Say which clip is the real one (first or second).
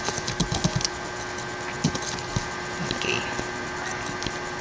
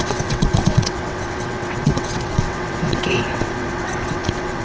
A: first